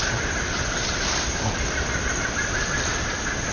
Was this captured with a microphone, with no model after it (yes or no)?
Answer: yes